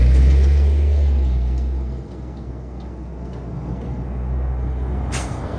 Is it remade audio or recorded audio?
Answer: remade